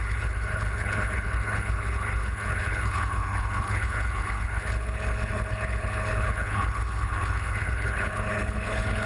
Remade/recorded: remade